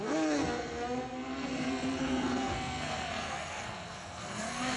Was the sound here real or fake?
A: fake